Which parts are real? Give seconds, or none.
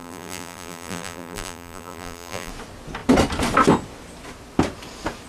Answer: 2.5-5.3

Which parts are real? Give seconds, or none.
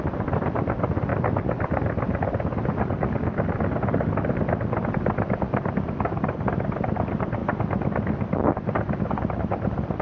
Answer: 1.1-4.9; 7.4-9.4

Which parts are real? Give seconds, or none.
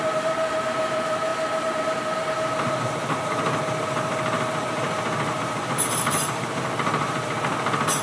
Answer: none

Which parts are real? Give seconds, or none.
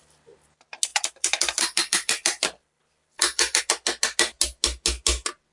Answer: 0.0-0.9; 3.6-5.5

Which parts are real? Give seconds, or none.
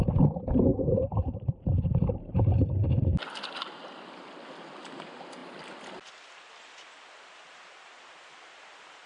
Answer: 0.0-0.7; 1.9-9.1